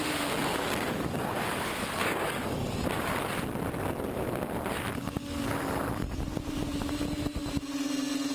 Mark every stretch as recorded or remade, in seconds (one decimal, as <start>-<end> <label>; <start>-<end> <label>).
0.0-0.4 recorded; 0.4-2.7 remade; 2.7-5.0 recorded; 5.0-5.5 remade; 5.5-8.3 recorded